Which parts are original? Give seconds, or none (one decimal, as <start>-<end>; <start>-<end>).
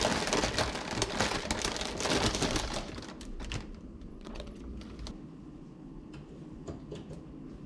0.0-4.1; 4.6-7.7